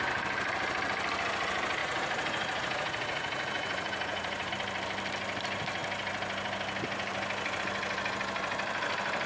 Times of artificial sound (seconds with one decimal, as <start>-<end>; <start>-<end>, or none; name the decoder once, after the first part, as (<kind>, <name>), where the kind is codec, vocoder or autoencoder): 1.8-4.5 (vocoder, Vocos)